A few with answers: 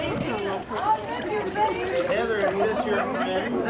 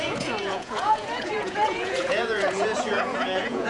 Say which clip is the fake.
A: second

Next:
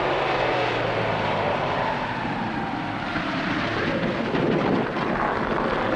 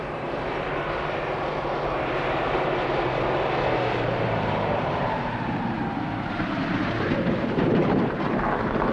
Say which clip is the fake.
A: second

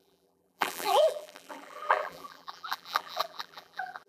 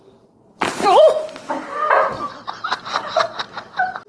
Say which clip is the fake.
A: first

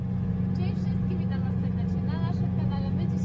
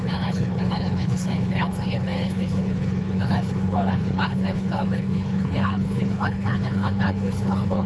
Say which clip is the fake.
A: second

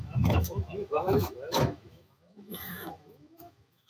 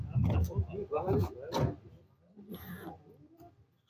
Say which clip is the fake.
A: first